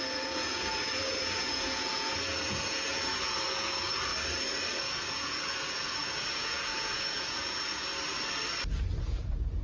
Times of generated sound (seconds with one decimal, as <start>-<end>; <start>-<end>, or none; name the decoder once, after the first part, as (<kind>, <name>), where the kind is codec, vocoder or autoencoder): 0.0-4.1 (vocoder, Vocos); 4.8-7.9; 9.0-9.6